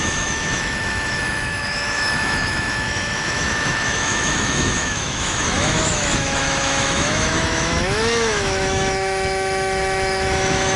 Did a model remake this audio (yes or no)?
yes